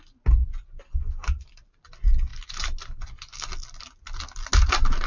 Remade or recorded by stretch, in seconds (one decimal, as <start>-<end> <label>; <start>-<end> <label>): 0.0-5.1 recorded